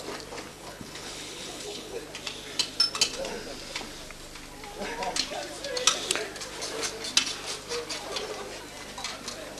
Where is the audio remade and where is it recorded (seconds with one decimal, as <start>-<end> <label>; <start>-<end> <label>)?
0.0-0.5 recorded; 0.5-2.0 remade; 2.0-9.6 recorded